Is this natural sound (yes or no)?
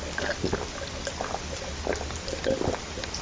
yes